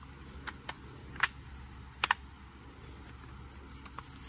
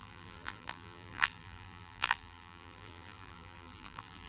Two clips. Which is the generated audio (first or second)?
second